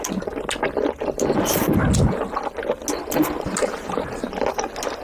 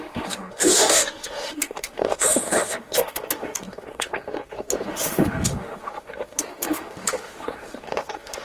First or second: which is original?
first